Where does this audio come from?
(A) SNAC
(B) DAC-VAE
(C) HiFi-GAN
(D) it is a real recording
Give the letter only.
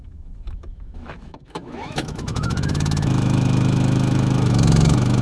B